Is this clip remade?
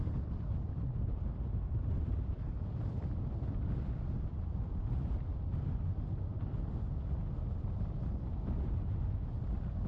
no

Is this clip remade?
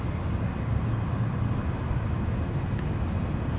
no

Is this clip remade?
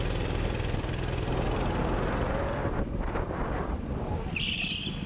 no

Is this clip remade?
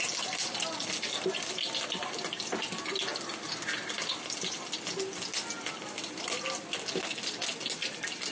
no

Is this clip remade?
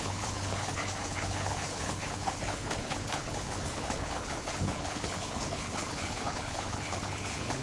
yes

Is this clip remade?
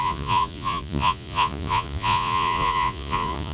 yes